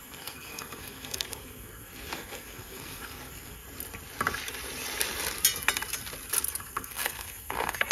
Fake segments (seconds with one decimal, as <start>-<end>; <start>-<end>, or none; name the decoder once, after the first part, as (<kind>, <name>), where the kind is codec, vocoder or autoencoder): 0.0-3.6 (codec, SNAC); 6.6-7.9